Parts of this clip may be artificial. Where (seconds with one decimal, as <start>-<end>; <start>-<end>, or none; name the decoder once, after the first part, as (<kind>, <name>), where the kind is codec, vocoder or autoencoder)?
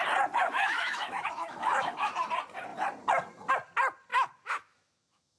0.4-2.1 (autoencoder, DAC-VAE); 4.1-5.4